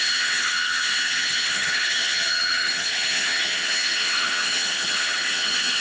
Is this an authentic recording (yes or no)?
no